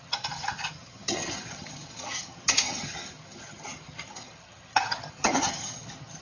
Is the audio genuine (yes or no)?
no